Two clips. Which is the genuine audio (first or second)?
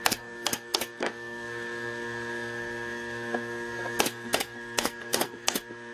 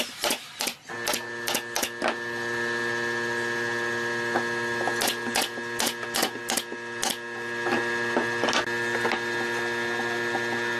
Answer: second